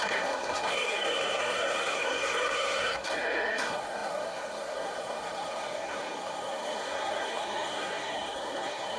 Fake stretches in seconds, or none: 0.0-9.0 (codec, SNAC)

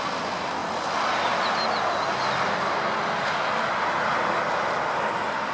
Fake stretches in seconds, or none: none

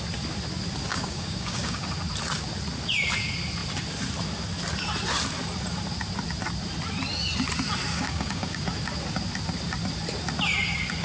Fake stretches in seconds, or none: 0.9-1.9 (codec, DAC); 7.9-8.6

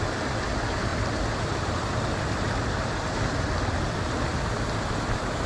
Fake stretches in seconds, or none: 0.9-4.2 (vocoder, BigVGAN v2)

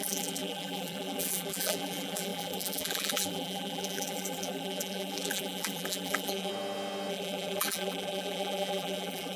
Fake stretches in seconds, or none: 0.0-6.5 (vocoder, BigVGAN v2); 7.1-9.4

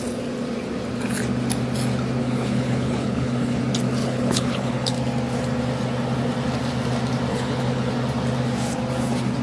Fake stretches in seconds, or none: 2.2-3.6 (codec, HILCodec); 4.0-4.9; 7.3-7.9